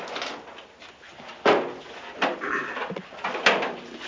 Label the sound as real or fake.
real